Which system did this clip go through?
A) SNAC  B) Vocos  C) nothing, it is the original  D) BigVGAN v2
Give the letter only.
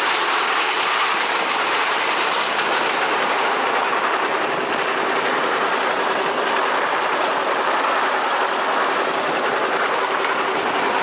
C